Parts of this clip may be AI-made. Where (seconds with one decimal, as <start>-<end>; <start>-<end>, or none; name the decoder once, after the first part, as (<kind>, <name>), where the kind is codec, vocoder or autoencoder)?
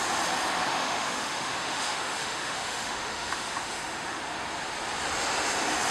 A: 0.7-4.2 (autoencoder, DAC-VAE)